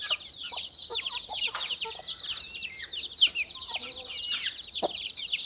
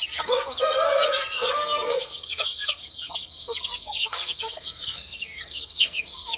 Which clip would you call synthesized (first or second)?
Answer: second